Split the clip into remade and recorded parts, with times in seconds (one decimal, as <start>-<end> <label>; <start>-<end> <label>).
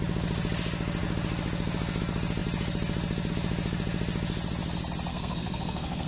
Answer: 0.0-5.1 recorded; 5.1-6.1 remade